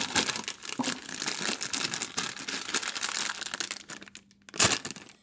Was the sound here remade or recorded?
recorded